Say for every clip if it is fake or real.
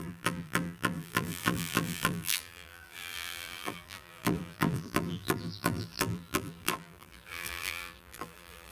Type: fake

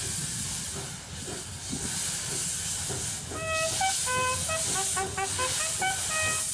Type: real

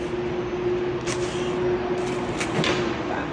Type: real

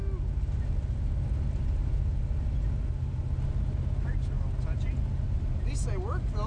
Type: real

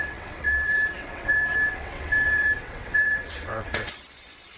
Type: fake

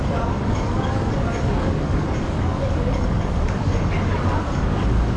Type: fake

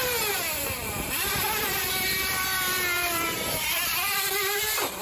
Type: fake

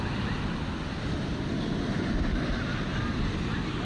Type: real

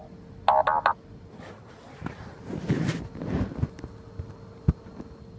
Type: real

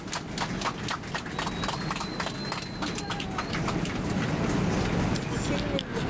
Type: real